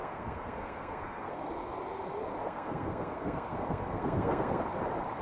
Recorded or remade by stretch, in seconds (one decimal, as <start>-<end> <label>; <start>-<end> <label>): 0.0-1.5 remade; 1.5-2.4 recorded; 2.4-4.6 remade; 4.6-5.2 recorded